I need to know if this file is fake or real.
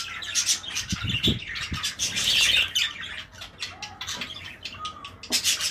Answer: real